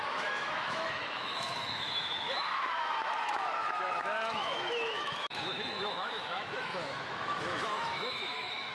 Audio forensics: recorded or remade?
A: remade